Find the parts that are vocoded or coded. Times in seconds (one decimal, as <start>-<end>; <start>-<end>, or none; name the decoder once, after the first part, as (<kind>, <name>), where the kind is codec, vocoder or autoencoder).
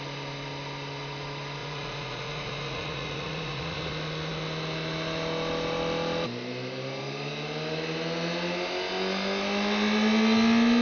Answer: 1.6-3.9 (vocoder, Vocos)